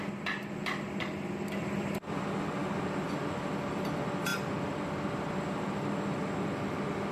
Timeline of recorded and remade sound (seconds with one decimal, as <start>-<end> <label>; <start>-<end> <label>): 0.0-7.1 recorded